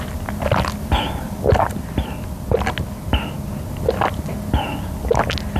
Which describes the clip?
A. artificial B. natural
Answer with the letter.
B